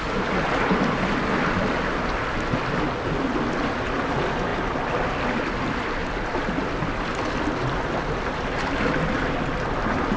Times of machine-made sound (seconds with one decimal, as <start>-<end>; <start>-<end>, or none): none